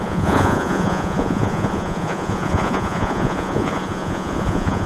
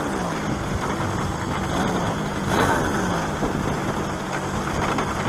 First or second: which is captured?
second